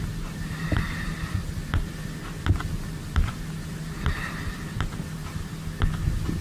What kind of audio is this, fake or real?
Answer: real